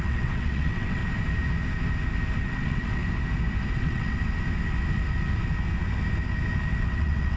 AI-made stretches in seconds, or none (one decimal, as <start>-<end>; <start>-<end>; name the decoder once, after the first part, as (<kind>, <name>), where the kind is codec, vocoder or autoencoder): 0.0-1.0 (vocoder, WaveNeXt); 2.4-3.0; 3.7-4.2; 6.8-7.4